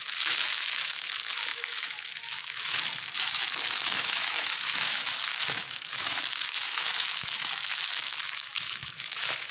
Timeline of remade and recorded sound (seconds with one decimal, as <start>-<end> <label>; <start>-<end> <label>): 0.0-9.5 remade

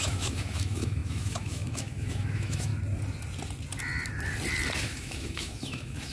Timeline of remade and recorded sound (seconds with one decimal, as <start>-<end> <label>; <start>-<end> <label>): 0.0-2.7 remade; 2.7-4.8 recorded; 4.8-6.1 remade

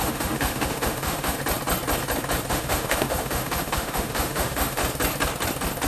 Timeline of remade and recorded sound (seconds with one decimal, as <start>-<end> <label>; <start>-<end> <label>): 0.0-1.4 remade; 1.4-2.5 recorded; 2.5-4.8 remade; 4.8-5.9 recorded

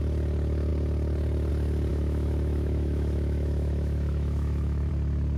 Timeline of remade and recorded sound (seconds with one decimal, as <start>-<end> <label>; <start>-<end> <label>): 0.0-1.9 recorded; 1.9-4.9 remade; 4.9-5.4 recorded